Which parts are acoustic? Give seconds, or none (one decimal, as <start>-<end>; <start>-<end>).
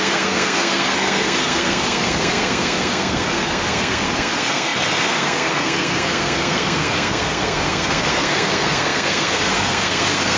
none